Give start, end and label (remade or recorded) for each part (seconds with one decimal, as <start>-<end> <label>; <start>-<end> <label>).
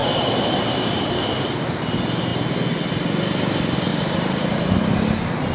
0.0-1.2 remade; 1.2-3.9 recorded; 3.9-4.6 remade; 4.6-5.5 recorded